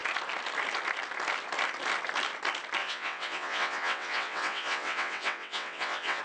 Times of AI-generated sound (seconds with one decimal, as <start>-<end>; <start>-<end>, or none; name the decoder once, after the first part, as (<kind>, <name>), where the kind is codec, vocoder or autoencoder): 2.8-6.2 (vocoder, WaveNeXt)